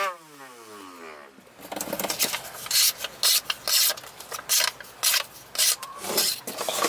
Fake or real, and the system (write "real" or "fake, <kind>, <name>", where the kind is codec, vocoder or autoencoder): real